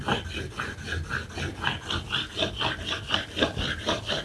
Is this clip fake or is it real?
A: real